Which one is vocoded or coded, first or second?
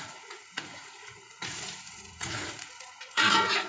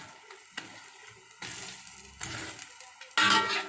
first